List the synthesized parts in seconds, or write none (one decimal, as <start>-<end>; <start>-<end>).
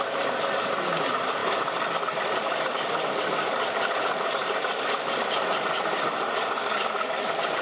1.4-2.0; 4.4-5.0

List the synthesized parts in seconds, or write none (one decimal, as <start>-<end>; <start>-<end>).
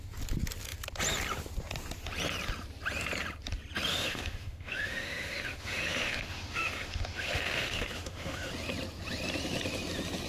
3.9-8.5